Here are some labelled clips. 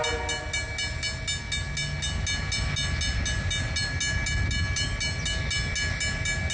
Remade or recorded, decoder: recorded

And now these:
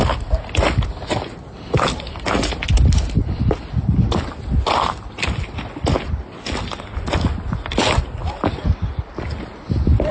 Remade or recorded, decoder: recorded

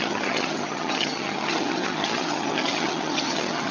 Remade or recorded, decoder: remade, vocoder, HiFi-GAN